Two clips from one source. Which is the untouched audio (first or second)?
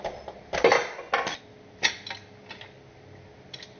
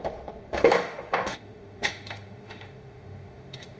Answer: first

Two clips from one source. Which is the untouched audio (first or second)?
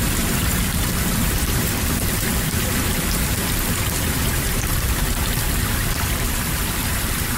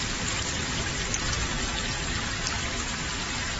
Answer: second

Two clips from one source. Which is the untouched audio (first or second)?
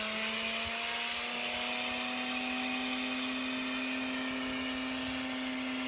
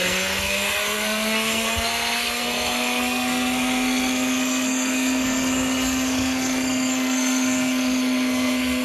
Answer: first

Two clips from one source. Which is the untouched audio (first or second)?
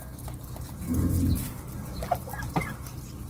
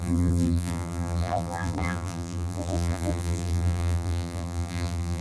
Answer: first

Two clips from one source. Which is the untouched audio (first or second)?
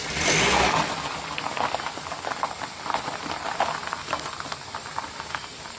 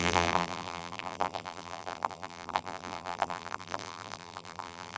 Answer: first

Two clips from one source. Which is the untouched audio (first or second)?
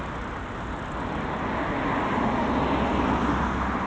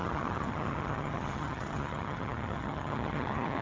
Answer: first